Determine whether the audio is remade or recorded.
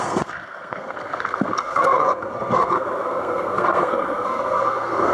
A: remade